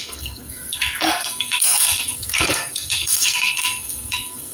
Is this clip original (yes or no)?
no